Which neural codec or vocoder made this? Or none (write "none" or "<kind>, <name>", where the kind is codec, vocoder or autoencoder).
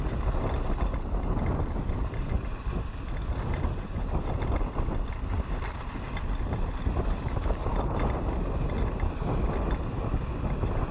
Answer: none